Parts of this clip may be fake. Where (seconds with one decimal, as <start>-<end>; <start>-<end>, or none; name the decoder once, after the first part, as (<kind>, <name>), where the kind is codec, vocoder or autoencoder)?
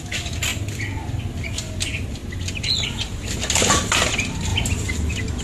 none